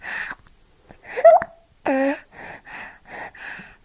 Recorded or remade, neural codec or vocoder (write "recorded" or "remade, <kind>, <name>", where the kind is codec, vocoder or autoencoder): recorded